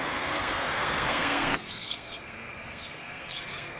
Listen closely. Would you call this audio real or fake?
fake